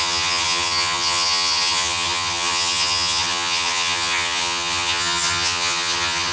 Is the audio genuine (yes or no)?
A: no